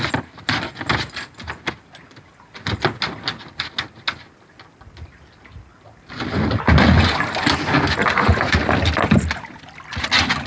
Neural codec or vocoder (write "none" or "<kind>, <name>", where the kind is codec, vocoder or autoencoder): none